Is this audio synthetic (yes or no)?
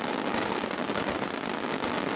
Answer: no